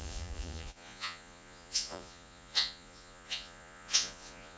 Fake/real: fake